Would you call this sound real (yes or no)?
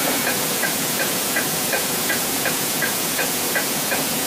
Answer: no